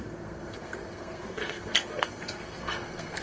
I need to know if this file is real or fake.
fake